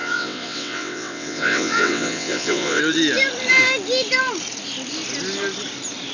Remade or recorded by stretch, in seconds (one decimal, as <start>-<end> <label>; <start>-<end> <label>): 0.0-2.8 remade; 2.8-6.1 recorded